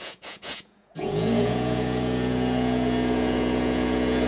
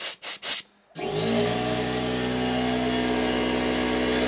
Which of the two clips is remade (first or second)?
first